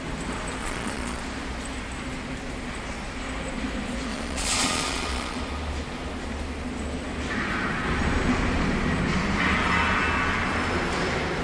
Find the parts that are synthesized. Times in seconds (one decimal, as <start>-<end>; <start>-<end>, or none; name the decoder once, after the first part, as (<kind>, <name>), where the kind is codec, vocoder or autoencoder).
0.6-1.2 (vocoder, Vocos); 4.1-5.4